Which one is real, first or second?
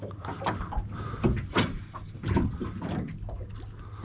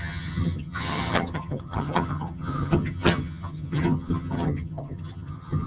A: first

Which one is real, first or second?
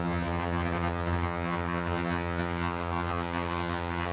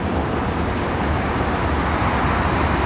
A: second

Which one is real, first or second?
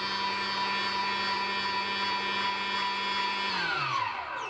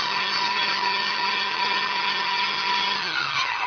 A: first